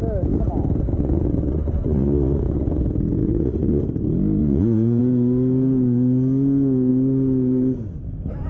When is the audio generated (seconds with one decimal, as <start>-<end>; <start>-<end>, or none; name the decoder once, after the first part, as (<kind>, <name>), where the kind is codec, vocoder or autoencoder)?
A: 0.9-2.8 (vocoder, Vocos); 3.2-3.8; 4.4-5.0